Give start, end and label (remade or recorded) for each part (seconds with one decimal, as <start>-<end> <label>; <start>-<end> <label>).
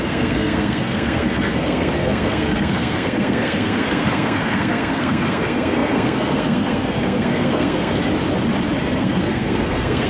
0.0-8.0 remade; 8.0-9.0 recorded; 9.0-10.1 remade